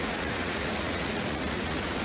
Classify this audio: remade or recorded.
remade